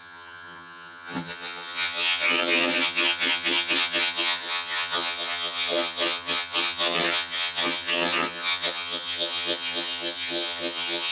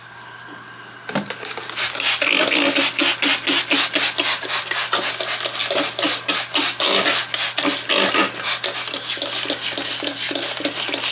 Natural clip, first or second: second